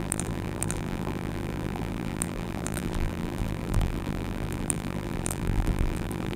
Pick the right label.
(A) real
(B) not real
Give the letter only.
B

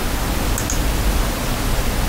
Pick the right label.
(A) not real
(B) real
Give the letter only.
B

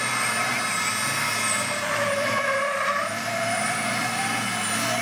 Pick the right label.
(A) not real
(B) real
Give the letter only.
B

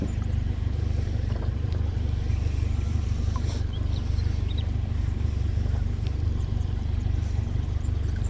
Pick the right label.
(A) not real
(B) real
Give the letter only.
A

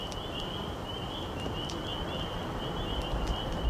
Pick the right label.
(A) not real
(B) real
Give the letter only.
B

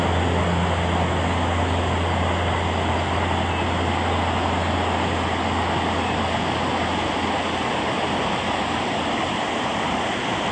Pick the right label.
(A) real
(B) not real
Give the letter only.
A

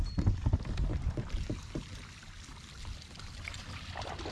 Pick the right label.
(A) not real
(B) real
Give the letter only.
A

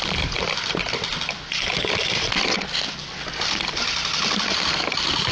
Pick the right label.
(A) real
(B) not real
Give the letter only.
A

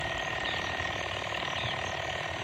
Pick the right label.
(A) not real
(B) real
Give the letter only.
A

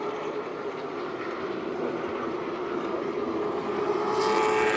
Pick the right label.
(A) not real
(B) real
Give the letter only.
A